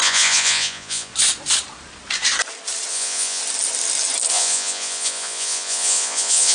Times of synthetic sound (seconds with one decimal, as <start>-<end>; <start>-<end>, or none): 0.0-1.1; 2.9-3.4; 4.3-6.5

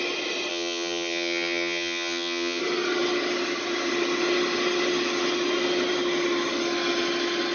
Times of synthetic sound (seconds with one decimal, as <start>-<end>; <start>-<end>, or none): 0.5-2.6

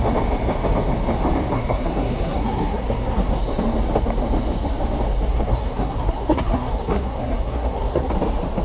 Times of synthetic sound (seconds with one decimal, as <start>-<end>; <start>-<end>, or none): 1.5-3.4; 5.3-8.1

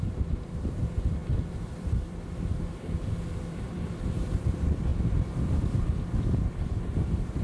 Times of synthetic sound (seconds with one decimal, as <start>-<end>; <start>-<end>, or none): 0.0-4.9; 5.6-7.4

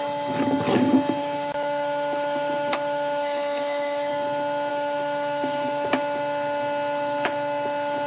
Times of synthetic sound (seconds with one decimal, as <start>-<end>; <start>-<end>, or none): 1.2-4.1; 4.7-5.9